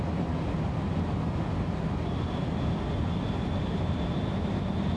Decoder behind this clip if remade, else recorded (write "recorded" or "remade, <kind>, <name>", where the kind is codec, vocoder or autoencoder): recorded